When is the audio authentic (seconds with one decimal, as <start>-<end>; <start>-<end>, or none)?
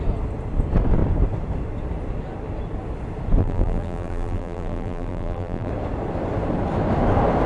0.0-3.4; 5.7-7.5